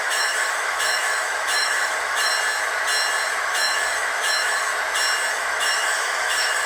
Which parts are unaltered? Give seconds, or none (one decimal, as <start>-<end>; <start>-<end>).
2.3-3.4; 4.7-5.3